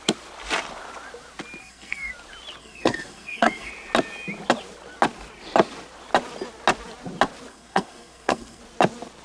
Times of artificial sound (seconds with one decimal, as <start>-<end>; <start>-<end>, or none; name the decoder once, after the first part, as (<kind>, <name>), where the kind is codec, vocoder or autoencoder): 1.6-2.1 (codec, SNAC); 2.6-3.7; 7.5-8.6